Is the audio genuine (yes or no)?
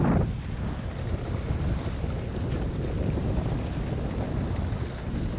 yes